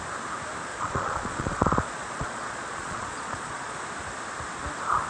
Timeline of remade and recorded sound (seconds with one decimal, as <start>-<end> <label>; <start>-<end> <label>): 0.0-0.7 recorded; 0.7-3.8 remade; 3.8-5.1 recorded